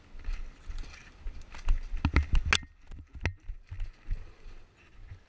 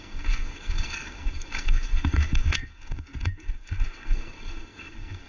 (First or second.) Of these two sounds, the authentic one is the first